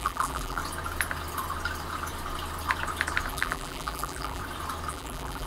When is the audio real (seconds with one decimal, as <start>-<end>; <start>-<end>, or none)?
0.6-3.3; 4.4-4.9